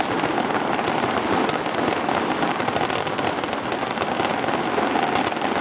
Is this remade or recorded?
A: recorded